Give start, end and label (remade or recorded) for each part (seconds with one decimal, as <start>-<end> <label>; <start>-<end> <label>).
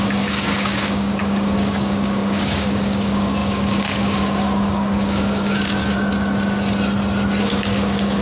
0.0-5.8 remade; 5.8-7.4 recorded; 7.4-8.2 remade